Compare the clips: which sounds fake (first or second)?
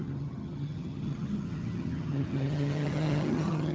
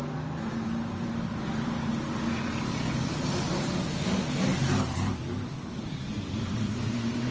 first